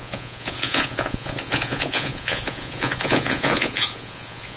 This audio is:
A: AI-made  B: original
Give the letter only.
A